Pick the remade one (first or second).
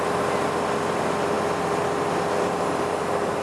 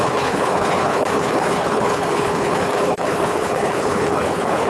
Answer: second